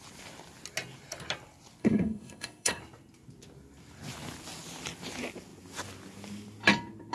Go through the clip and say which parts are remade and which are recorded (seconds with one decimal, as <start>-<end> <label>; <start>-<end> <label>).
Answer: 0.0-1.8 recorded; 1.8-2.8 remade; 2.8-7.1 recorded